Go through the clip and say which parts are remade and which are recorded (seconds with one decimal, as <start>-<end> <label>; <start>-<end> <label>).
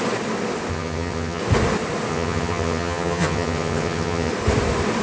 0.0-0.7 recorded; 0.7-1.4 remade; 1.4-2.1 recorded; 2.1-4.3 remade; 4.3-5.0 recorded